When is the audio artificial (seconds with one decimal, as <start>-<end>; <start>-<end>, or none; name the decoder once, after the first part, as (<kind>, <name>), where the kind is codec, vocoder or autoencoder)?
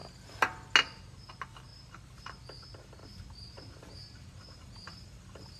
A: 1.7-2.4 (vocoder, BigVGAN v2); 3.0-5.6